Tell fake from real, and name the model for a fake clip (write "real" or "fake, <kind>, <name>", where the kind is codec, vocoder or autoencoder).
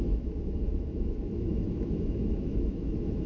fake, autoencoder, DAC-VAE